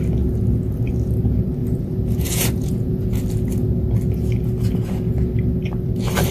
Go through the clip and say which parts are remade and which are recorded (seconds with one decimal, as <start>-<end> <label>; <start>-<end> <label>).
0.0-1.6 recorded; 1.6-3.1 remade; 3.1-6.3 recorded